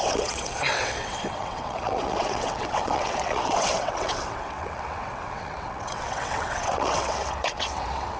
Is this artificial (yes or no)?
yes